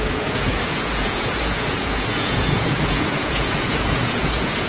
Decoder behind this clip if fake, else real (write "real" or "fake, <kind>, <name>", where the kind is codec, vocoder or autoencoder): fake, vocoder, Vocos